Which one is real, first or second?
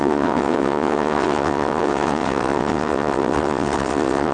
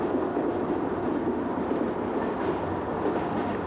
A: second